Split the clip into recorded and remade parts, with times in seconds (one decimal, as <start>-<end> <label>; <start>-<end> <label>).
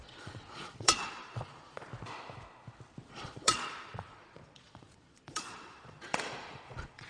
0.0-1.9 remade; 1.9-3.1 recorded; 3.1-7.1 remade